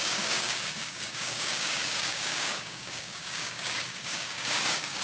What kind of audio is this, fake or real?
fake